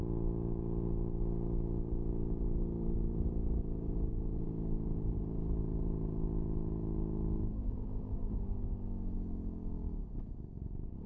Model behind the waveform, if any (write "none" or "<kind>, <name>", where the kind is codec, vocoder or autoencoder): none